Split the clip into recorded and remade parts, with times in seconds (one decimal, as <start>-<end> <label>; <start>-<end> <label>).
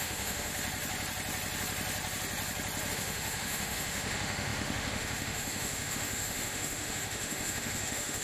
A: 0.0-0.5 remade; 0.5-2.9 recorded; 2.9-8.2 remade